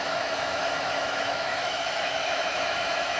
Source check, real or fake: fake